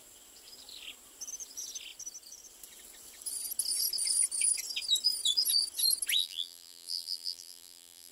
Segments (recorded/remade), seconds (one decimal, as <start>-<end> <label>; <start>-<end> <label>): 0.0-6.2 recorded; 6.2-8.1 remade